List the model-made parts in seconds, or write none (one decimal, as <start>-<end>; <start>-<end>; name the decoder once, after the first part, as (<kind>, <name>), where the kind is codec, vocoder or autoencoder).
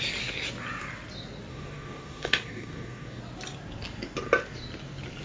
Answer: 1.5-3.2 (codec, DAC)